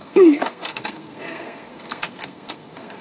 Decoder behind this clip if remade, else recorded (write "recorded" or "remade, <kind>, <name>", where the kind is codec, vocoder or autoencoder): remade, codec, SNAC